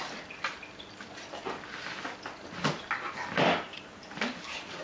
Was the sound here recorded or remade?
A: recorded